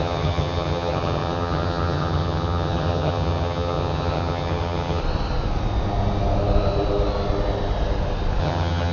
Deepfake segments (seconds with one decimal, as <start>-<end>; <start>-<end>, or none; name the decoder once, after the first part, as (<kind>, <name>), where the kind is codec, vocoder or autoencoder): 0.0-5.0 (vocoder, HiFi-GAN); 8.4-8.9